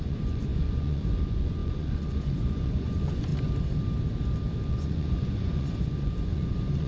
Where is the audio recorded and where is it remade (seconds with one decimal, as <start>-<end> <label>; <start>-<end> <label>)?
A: 0.0-3.3 remade; 3.3-4.7 recorded; 4.7-6.9 remade